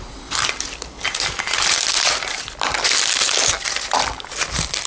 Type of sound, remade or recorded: recorded